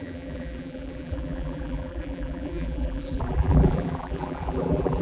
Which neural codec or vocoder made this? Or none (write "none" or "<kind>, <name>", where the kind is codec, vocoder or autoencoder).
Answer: vocoder, BigVGAN v2